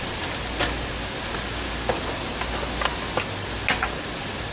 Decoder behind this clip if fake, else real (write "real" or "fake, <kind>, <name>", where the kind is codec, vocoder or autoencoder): real